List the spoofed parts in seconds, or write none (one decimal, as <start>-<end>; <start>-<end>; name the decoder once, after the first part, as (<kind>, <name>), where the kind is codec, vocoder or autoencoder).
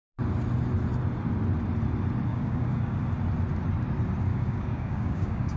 2.3-3.0 (codec, DAC); 4.3-5.6